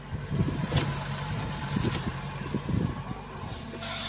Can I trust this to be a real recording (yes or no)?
no